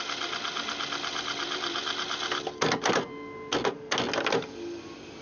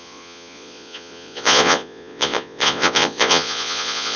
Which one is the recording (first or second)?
first